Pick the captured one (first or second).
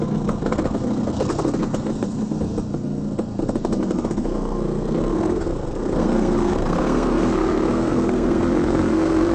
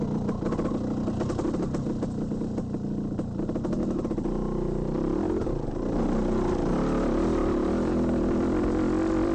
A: second